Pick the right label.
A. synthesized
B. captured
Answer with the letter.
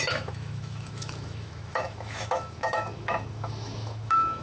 A